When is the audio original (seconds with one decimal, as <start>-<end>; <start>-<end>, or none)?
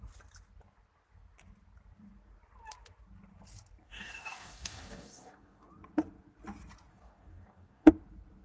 0.0-3.8; 5.7-6.9; 7.9-8.4